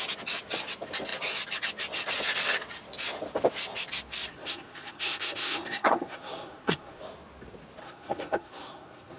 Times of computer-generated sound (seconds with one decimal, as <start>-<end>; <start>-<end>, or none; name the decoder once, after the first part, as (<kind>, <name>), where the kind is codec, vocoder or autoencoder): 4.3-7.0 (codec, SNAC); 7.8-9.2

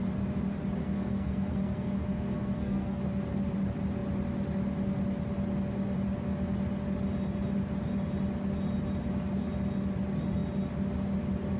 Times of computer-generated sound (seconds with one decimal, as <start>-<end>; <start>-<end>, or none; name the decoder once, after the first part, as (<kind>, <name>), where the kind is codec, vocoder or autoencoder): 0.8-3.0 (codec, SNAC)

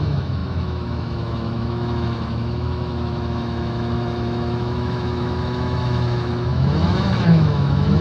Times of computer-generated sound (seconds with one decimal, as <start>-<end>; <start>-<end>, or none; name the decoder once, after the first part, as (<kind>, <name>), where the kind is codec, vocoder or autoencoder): 0.0-8.0 (autoencoder, DAC-VAE)

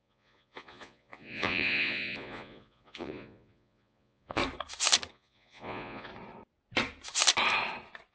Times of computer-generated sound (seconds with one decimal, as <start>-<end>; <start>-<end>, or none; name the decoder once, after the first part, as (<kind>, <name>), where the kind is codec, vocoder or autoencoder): 0.0-4.4 (vocoder, Vocos); 5.1-6.1

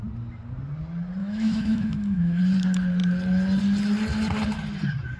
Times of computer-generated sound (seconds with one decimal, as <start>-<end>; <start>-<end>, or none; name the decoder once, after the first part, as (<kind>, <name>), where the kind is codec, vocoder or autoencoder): 1.2-2.4 (autoencoder, DAC-VAE)

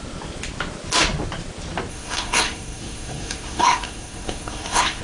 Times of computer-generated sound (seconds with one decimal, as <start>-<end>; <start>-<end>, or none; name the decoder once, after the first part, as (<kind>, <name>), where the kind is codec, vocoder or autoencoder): 1.9-5.0 (codec, SNAC)

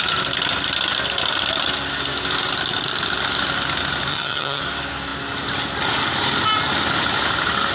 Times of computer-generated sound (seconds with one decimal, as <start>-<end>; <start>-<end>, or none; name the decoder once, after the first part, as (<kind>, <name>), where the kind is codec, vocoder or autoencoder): 4.1-4.6 (vocoder, HiFi-GAN)

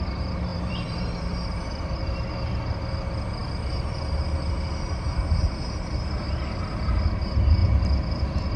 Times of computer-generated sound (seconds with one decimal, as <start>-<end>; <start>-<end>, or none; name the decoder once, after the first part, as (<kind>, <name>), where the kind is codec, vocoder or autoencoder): 0.5-2.0 (vocoder, BigVGAN v2); 7.6-8.6